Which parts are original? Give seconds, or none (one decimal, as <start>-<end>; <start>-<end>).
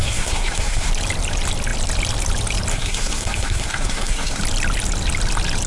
0.9-2.7; 4.4-5.7